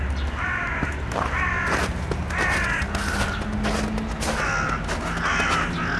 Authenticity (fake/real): real